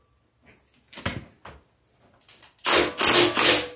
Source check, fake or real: real